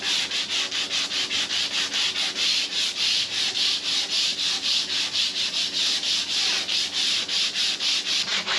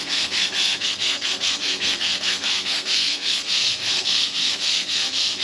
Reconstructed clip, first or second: second